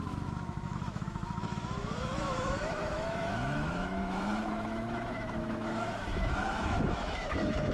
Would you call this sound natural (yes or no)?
no